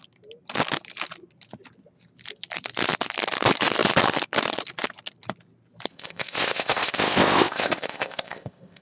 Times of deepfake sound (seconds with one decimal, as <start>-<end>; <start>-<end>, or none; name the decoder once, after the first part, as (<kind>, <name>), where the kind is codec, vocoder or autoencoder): 5.9-8.8 (codec, ZipCodec)